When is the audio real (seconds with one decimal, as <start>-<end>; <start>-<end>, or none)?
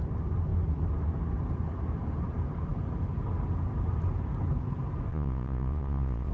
0.0-5.1